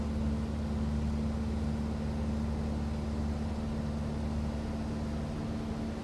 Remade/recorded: recorded